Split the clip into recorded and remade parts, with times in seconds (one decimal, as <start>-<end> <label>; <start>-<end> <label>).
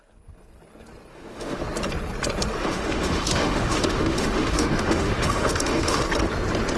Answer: 0.0-1.1 recorded; 1.1-1.6 remade; 1.6-2.6 recorded; 2.6-6.0 remade; 6.0-6.8 recorded